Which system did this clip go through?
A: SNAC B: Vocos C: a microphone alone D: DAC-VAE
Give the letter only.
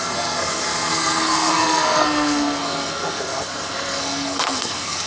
A